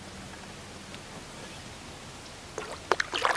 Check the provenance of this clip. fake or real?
real